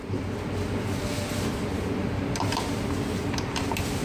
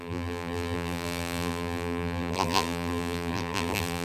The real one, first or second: first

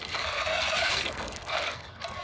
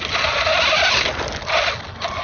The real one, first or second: second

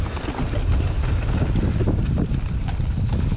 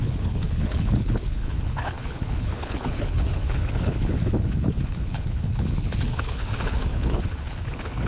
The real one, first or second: first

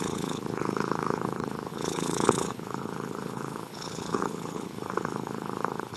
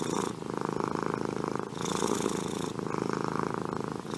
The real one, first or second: second